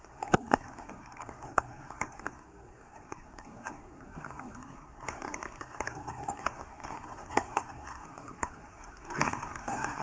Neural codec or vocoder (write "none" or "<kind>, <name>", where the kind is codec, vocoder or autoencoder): codec, SNAC